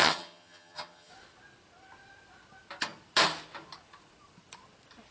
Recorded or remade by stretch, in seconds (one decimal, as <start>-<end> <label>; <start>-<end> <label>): 0.0-1.1 remade; 1.1-5.1 recorded